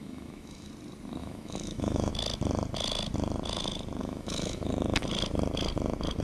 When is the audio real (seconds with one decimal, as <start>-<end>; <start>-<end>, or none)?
0.7-1.2; 2.1-4.0; 4.7-6.2